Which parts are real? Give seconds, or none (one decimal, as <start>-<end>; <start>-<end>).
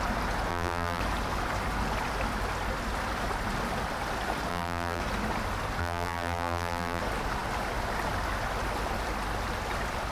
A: 0.0-0.5; 1.0-4.5; 5.0-5.8; 7.0-10.1